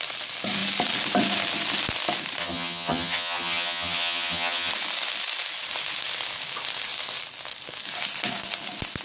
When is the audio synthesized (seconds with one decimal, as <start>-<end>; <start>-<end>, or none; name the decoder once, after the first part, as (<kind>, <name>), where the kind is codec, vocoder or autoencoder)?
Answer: 2.4-4.7 (vocoder, HiFi-GAN)

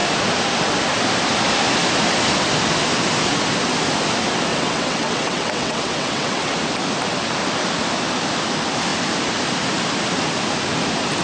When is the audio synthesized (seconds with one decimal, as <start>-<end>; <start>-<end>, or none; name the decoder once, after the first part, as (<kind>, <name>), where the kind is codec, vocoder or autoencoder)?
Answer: 4.5-6.5 (vocoder, WaveNeXt)

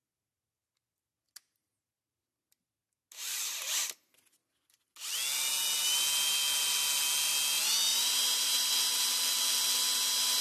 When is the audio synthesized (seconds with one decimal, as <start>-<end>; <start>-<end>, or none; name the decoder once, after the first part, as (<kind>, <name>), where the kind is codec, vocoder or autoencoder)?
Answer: 7.9-8.7 (vocoder, BigVGAN v2)